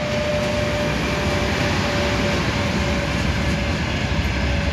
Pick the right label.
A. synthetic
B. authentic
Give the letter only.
B